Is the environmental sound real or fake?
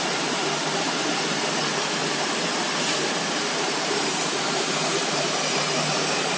fake